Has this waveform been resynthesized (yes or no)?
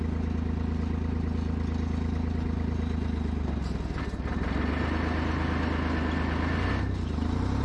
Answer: no